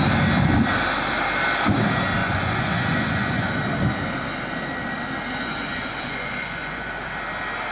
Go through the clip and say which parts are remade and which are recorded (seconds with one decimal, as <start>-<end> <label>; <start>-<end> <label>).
0.0-2.2 recorded; 2.2-3.5 remade; 3.5-5.4 recorded; 5.4-6.9 remade; 6.9-7.7 recorded